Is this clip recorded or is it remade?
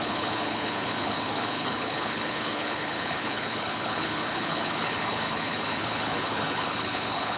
remade